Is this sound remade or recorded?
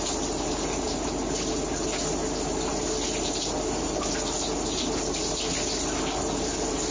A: recorded